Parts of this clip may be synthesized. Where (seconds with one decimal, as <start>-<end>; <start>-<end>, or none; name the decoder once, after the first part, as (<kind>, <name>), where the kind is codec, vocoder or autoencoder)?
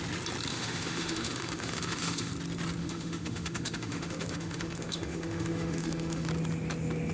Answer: 0.5-2.3 (autoencoder, DAC-VAE); 2.8-6.3